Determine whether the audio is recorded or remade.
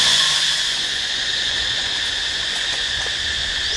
remade